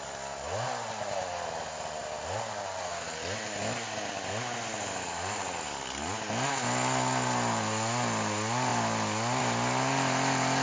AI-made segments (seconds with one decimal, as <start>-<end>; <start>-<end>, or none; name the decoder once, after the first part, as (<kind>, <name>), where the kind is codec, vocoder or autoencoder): none